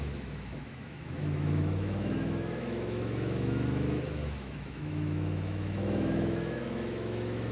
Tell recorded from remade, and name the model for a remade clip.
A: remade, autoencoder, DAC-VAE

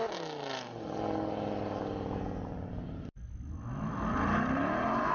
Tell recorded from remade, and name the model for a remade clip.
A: recorded